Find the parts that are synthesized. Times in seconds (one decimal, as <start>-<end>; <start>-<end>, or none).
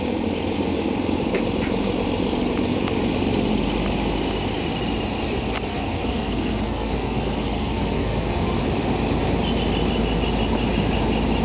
5.7-8.6